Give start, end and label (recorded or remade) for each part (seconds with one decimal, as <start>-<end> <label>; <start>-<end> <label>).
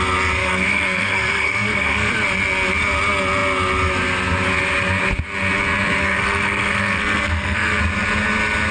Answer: 0.0-0.4 recorded; 0.4-2.1 remade; 2.1-6.0 recorded; 6.0-7.8 remade; 7.8-8.7 recorded